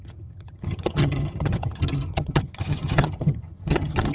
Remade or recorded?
remade